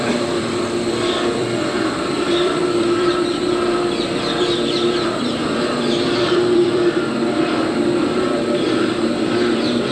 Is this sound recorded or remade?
remade